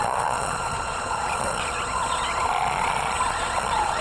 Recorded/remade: remade